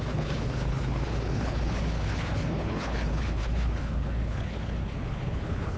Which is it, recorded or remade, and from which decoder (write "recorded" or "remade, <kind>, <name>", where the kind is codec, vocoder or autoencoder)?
remade, codec, HILCodec